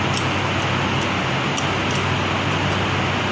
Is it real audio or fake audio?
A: real